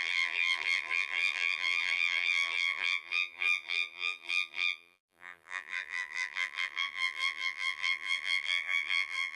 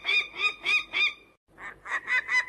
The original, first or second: second